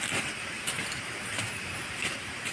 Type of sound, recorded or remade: recorded